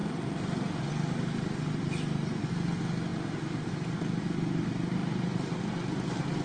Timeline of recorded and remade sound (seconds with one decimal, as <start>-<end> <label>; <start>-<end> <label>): 0.0-5.0 recorded; 5.0-6.4 remade